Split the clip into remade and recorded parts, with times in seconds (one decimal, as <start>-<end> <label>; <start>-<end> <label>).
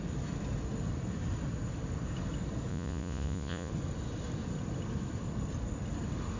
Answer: 0.0-2.7 recorded; 2.7-3.7 remade; 3.7-6.4 recorded